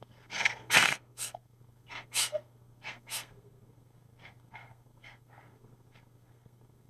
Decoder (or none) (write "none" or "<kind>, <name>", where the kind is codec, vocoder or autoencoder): codec, SNAC